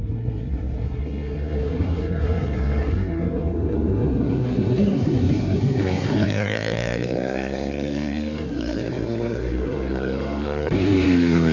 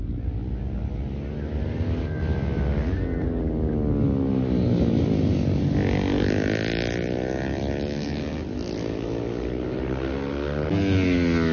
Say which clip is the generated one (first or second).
first